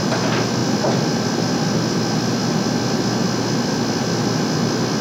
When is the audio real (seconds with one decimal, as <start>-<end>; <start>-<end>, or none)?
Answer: 0.0-5.0